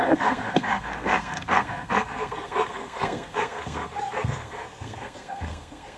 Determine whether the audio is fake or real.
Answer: fake